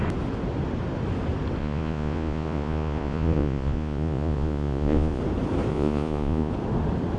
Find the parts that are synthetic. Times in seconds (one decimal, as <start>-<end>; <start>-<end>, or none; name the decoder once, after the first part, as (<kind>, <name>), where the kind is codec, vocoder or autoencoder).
1.6-5.2 (vocoder, Vocos); 5.7-6.5

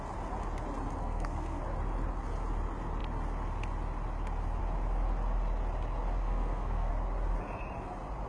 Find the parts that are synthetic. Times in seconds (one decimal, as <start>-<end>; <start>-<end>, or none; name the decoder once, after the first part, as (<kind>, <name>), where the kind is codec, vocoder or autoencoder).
1.0-1.6 (codec, SNAC); 6.2-6.9

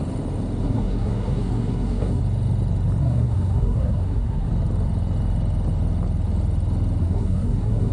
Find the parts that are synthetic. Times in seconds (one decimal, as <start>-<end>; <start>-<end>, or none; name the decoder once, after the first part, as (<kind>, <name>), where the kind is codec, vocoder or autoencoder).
0.6-2.2 (codec, SNAC); 3.0-4.5; 7.0-7.9

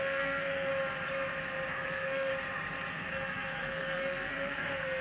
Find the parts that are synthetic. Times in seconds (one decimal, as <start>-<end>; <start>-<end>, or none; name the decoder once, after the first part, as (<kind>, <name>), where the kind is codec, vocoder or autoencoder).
0.0-0.7 (codec, SNAC); 1.7-2.3; 2.9-5.0

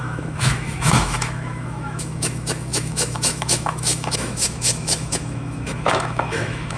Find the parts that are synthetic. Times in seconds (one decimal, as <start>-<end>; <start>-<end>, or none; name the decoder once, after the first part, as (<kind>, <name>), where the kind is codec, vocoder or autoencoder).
0.0-6.8 (autoencoder, DAC-VAE)

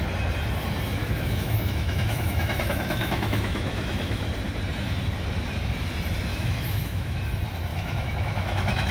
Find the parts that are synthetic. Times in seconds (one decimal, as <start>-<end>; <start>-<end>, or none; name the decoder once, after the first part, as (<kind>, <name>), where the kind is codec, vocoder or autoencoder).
1.0-4.3 (autoencoder, DAC-VAE); 6.3-7.2; 7.7-8.9